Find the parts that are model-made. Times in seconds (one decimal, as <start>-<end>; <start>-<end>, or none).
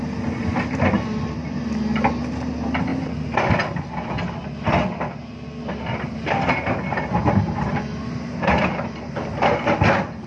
none